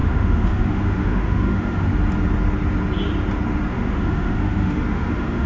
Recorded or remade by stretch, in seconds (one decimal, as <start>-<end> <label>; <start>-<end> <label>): 0.0-1.9 remade; 1.9-3.7 recorded; 3.7-5.5 remade